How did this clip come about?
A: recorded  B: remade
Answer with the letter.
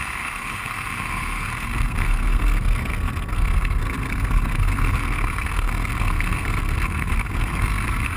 B